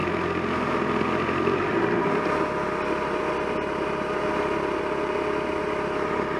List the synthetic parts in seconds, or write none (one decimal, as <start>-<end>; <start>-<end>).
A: none